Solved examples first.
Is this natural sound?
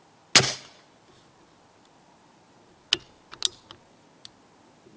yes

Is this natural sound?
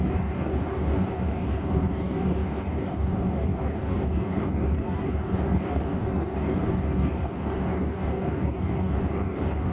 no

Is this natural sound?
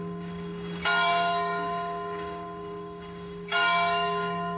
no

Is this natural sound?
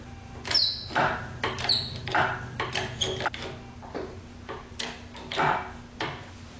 yes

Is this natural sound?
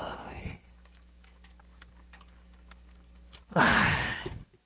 no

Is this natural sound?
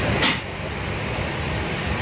yes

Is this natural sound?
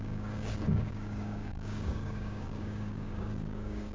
no